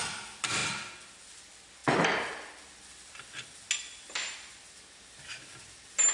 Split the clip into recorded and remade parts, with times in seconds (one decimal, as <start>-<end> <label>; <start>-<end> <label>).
0.0-6.1 recorded